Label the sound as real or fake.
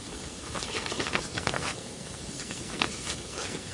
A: fake